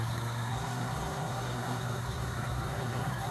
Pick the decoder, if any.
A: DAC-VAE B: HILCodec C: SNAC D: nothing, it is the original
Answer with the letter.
C